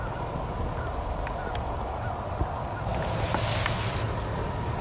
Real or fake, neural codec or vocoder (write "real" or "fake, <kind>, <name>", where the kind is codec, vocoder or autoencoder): real